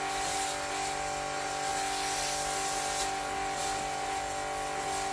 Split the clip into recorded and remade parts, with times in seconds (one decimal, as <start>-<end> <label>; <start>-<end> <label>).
0.0-5.1 recorded